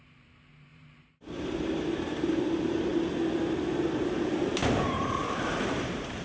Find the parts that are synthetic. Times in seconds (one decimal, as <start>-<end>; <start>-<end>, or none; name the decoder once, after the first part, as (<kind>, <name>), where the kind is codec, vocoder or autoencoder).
0.0-2.9 (vocoder, BigVGAN v2); 4.1-5.2; 5.7-6.2